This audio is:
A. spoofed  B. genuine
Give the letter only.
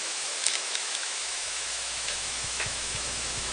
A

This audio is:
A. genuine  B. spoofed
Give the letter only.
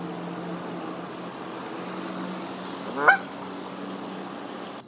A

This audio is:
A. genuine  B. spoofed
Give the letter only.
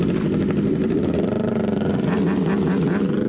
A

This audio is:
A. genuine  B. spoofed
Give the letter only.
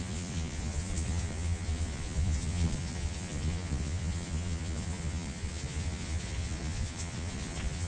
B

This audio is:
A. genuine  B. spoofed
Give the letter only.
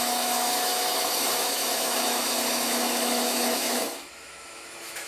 B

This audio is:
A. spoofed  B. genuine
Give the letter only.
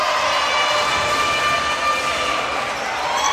B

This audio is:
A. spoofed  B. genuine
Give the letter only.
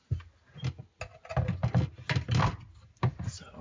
B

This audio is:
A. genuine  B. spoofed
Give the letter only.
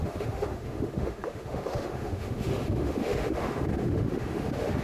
B